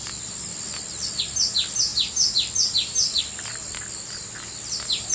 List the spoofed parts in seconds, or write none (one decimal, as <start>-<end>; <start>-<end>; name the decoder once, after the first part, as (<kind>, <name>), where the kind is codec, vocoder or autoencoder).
none